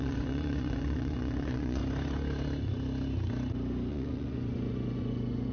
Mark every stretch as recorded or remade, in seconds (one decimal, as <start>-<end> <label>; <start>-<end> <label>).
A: 0.0-1.8 remade; 1.8-3.9 recorded; 3.9-5.5 remade